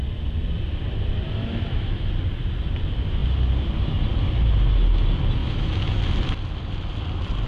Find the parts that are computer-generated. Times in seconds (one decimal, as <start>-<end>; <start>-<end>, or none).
1.4-2.1; 5.4-6.0